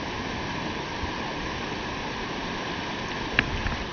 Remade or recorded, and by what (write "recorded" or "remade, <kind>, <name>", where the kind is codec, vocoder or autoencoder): recorded